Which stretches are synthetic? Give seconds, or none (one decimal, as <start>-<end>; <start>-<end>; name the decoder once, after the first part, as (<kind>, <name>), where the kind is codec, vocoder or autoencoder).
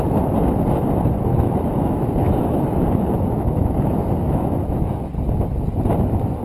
1.3-5.1 (autoencoder, DAC-VAE)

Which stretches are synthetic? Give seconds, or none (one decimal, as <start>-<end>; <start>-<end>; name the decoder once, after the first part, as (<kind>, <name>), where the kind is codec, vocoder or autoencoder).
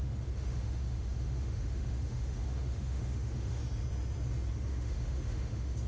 0.0-3.6 (autoencoder, DAC-VAE); 4.5-5.9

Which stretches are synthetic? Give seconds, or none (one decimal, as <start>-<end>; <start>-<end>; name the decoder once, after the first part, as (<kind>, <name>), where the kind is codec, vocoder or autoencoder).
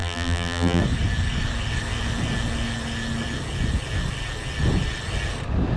0.0-0.8 (vocoder, BigVGAN v2)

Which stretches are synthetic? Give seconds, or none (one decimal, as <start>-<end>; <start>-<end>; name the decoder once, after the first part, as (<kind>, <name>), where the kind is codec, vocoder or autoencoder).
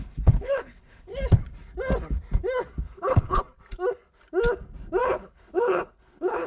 0.0-1.1 (codec, HILCodec); 2.8-3.4; 5.0-6.5